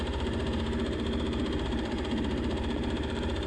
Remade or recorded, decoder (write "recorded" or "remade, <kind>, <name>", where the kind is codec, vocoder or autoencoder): remade, vocoder, BigVGAN v2